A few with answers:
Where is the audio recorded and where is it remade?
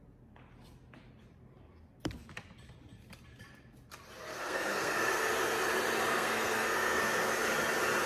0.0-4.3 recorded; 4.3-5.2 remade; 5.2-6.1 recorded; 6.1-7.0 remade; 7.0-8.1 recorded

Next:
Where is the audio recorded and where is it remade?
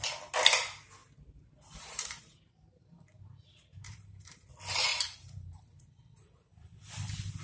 0.0-1.0 recorded; 1.0-4.5 remade; 4.5-4.9 recorded; 4.9-5.6 remade; 5.6-7.4 recorded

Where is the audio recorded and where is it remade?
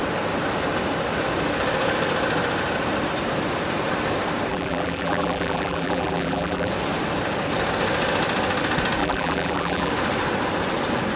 0.0-4.5 recorded; 4.5-6.7 remade; 6.7-9.0 recorded; 9.0-9.9 remade; 9.9-11.2 recorded